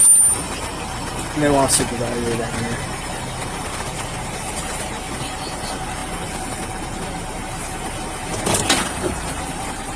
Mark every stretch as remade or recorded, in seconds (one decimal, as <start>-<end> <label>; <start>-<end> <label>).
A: 0.0-10.0 recorded

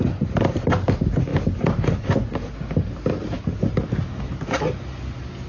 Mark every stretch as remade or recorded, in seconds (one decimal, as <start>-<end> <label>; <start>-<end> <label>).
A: 0.0-5.5 recorded

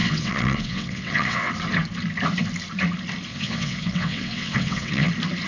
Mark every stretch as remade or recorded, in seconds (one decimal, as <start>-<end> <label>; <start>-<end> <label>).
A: 0.0-1.5 remade; 1.5-3.3 recorded; 3.3-5.1 remade; 5.1-5.5 recorded

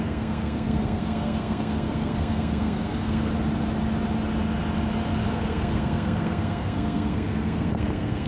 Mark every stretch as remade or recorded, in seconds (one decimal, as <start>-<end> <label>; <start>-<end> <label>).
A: 0.0-3.3 remade; 3.3-5.3 recorded; 5.3-8.3 remade